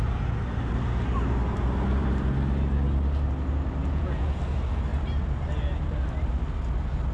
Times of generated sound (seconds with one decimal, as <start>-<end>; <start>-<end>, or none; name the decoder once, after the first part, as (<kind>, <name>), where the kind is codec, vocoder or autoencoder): 3.8-4.4 (vocoder, Vocos)